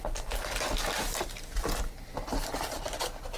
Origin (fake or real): real